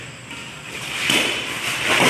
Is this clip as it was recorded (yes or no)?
yes